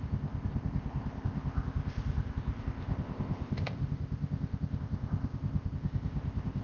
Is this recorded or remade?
remade